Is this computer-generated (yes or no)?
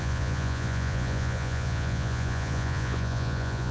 yes